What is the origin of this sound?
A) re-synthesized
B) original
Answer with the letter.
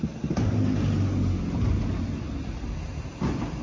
B